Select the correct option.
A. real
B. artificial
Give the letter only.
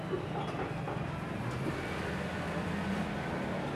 B